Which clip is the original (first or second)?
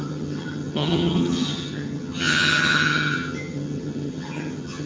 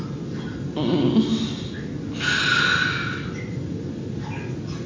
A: second